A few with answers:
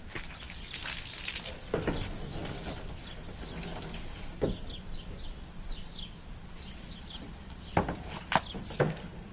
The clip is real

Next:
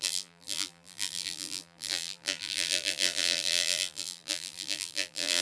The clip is fake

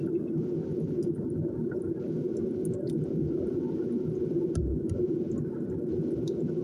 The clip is real